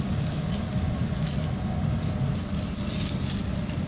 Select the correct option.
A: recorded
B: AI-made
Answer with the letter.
A